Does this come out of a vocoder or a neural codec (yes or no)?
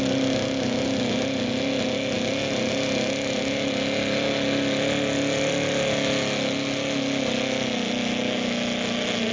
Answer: no